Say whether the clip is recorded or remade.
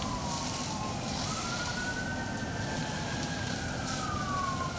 recorded